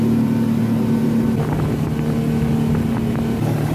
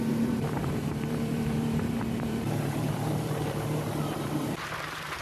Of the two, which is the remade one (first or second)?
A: second